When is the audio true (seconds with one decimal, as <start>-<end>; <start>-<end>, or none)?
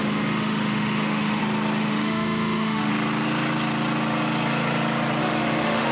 1.4-1.8; 2.9-5.2